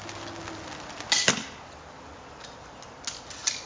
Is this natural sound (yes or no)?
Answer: yes